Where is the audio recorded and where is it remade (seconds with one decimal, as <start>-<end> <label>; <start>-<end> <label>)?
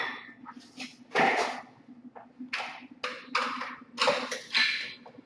0.0-5.3 recorded